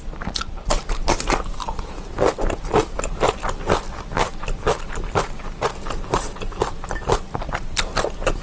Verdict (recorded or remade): recorded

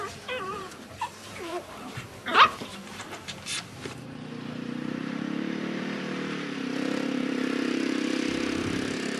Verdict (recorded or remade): remade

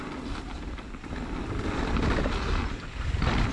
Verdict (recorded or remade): recorded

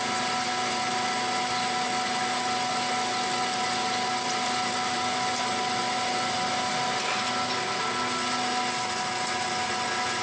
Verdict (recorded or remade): recorded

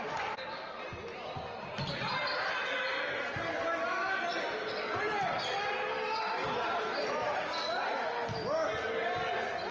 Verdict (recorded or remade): recorded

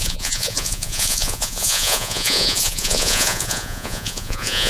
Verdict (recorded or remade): remade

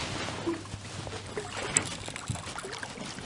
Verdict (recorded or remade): recorded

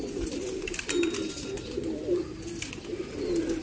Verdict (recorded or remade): recorded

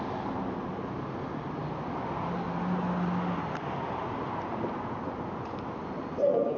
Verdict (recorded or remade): recorded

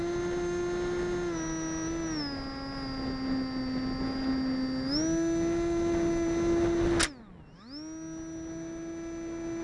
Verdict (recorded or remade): recorded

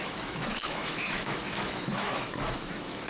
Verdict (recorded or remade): remade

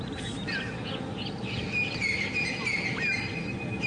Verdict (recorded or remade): recorded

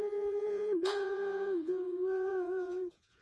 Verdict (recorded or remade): remade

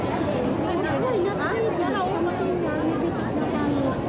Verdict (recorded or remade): recorded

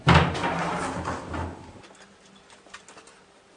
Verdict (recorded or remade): recorded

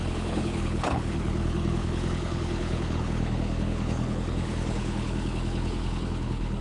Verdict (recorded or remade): remade